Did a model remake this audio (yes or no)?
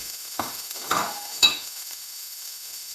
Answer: yes